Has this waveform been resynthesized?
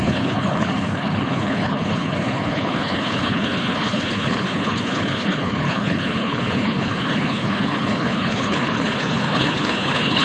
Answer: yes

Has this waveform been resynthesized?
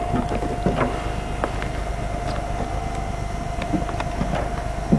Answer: no